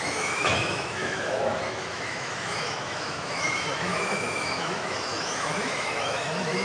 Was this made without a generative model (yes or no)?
no